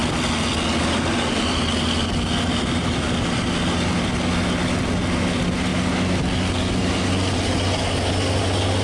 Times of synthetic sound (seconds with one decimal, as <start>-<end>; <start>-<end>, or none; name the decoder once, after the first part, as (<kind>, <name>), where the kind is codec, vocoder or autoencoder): none